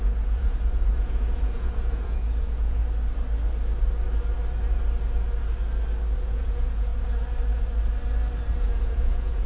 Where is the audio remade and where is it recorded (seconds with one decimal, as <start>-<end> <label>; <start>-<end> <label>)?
0.0-2.8 remade; 2.8-6.2 recorded; 6.2-6.9 remade; 6.9-8.5 recorded; 8.5-9.5 remade